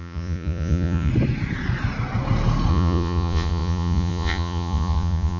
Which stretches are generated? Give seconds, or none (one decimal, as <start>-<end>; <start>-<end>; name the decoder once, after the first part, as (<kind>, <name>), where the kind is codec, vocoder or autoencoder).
0.0-1.1 (vocoder, Vocos); 2.7-5.4